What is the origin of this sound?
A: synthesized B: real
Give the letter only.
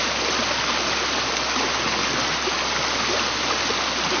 B